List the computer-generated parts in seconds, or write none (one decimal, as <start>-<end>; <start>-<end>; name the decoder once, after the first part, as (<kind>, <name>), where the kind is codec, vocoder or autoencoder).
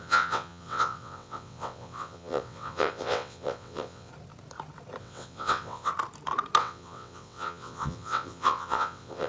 0.0-4.1 (vocoder, WaveNeXt); 5.0-5.9; 6.6-9.3